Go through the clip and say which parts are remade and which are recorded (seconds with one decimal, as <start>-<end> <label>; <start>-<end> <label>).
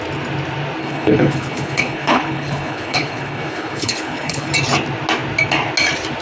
0.0-0.8 recorded; 0.8-4.5 remade; 4.5-6.2 recorded